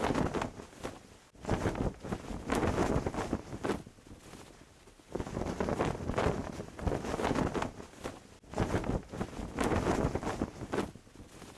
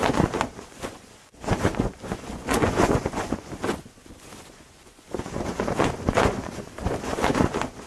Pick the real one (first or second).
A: first